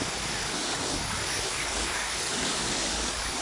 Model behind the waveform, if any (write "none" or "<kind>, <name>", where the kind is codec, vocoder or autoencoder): codec, DAC